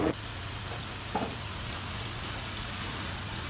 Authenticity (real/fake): fake